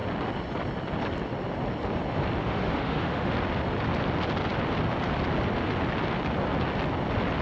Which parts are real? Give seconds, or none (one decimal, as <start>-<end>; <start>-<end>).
0.0-2.4; 3.3-7.4